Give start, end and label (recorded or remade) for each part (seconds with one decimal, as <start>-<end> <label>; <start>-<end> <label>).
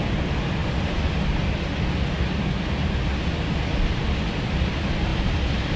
0.0-5.8 recorded